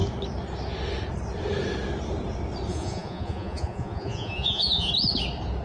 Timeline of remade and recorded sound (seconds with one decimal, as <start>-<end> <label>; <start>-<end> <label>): 0.0-2.7 recorded; 2.7-4.9 remade; 4.9-5.6 recorded